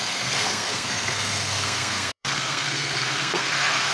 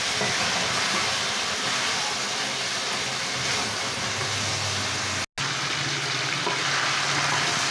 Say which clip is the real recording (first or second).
second